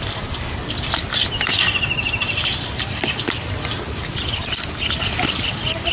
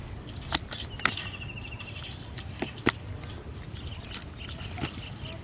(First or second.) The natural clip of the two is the second